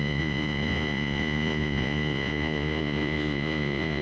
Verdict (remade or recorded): remade